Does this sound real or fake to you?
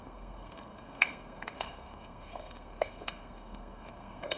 fake